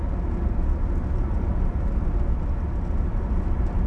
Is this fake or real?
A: real